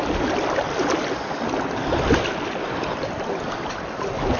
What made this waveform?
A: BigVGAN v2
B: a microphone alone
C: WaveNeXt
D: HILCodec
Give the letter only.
B